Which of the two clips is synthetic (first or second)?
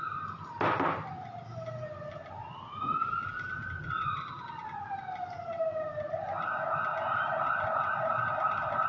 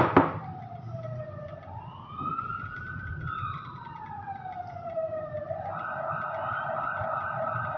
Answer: second